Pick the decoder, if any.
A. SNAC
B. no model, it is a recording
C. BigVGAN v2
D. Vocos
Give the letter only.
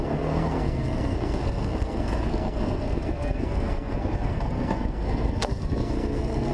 A